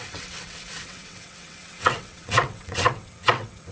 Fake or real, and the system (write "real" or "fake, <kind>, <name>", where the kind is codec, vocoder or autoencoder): fake, vocoder, WaveNeXt